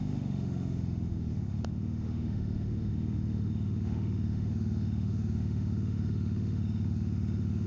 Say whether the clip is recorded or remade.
remade